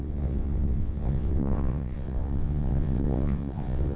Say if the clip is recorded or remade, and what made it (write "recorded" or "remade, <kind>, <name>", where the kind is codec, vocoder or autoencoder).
remade, vocoder, WaveNeXt